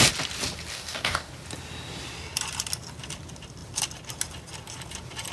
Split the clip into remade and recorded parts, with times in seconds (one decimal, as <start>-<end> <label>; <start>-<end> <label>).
0.0-0.7 recorded; 0.7-1.3 remade; 1.3-5.3 recorded